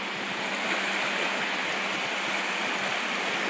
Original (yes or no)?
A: yes